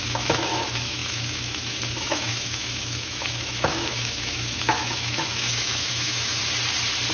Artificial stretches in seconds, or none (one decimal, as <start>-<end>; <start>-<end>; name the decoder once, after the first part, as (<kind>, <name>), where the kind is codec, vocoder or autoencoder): 0.0-6.4 (autoencoder, DAC-VAE)